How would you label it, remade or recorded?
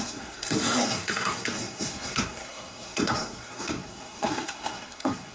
remade